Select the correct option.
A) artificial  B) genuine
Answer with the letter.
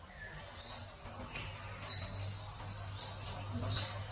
B